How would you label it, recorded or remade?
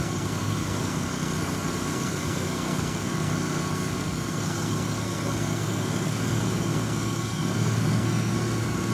remade